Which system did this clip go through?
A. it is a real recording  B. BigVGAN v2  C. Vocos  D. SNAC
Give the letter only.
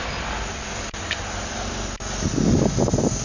A